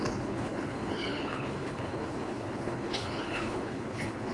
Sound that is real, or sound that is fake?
fake